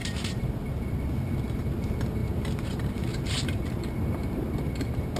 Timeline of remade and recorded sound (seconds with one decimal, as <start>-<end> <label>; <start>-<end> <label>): 0.0-0.5 remade; 0.5-2.2 recorded; 2.2-4.5 remade; 4.5-5.2 recorded